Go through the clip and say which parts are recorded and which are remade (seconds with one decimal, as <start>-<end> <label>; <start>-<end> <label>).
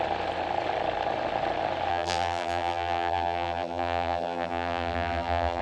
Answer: 0.0-1.9 recorded; 1.9-5.6 remade